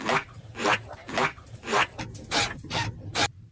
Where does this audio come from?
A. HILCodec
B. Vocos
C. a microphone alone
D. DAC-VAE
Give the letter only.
C